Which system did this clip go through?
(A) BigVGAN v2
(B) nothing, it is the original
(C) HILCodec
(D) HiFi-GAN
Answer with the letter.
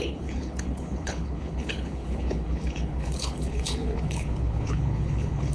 C